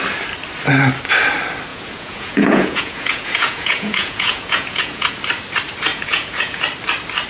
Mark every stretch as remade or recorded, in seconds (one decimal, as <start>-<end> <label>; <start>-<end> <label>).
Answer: 0.0-1.7 recorded; 1.7-5.1 remade; 5.1-5.9 recorded; 5.9-6.6 remade; 6.6-7.3 recorded